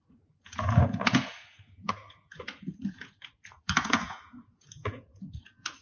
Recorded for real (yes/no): no